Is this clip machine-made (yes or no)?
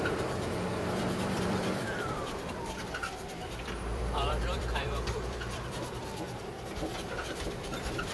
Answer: yes